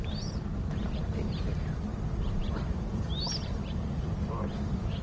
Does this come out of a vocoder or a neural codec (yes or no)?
yes